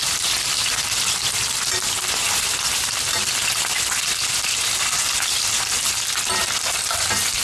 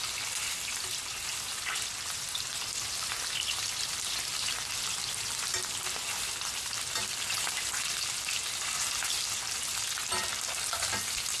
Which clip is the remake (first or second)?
first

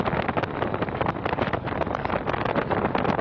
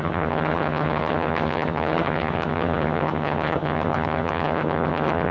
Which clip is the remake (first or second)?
second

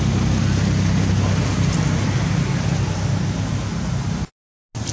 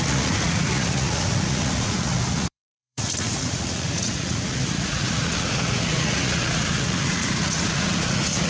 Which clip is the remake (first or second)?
second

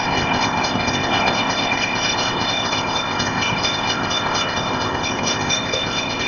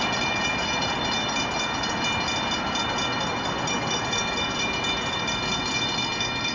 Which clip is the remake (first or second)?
first